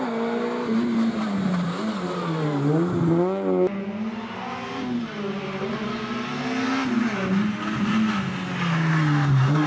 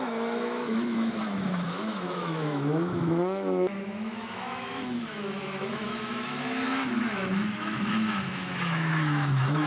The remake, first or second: second